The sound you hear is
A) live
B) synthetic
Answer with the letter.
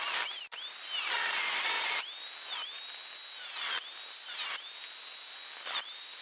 A